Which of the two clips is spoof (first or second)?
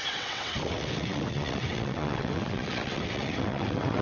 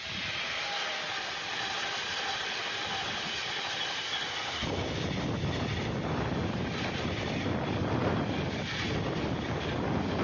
first